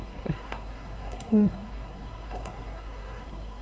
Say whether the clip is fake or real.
fake